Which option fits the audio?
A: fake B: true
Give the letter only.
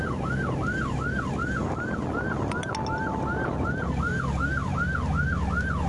B